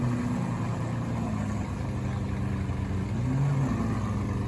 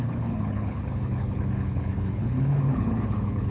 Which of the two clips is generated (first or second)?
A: second